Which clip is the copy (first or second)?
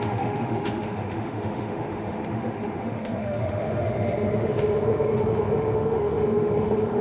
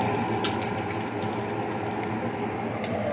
first